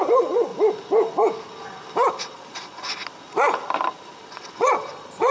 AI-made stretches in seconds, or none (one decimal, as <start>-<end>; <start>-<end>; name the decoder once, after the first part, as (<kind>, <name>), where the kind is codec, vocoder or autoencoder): 0.0-0.5 (vocoder, Vocos); 2.1-3.0; 4.2-5.3